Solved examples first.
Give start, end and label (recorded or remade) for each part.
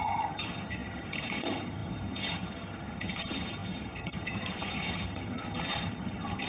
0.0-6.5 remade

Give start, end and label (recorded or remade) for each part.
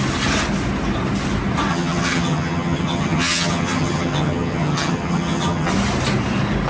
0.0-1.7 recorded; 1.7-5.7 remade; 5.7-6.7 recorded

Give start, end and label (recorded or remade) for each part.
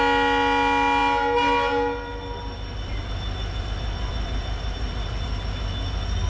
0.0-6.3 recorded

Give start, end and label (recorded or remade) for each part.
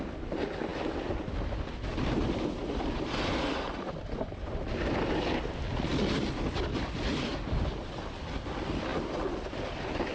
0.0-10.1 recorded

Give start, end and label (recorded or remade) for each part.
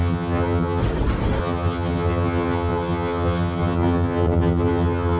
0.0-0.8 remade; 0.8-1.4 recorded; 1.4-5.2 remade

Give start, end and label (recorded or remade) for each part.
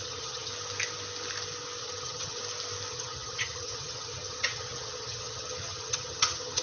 0.0-0.5 remade; 0.5-1.8 recorded; 1.8-2.4 remade; 2.4-2.9 recorded; 2.9-6.6 remade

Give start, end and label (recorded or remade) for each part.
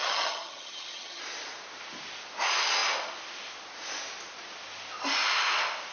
0.0-1.2 remade; 1.2-5.9 recorded